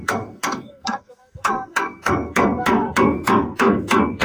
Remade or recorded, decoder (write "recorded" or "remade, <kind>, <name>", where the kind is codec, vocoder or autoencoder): remade, codec, SNAC